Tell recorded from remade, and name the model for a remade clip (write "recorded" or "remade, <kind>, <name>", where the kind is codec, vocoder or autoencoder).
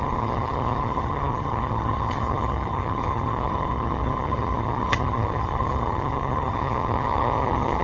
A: remade, vocoder, HiFi-GAN